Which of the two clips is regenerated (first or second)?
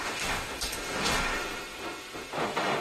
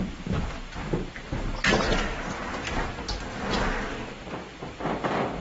first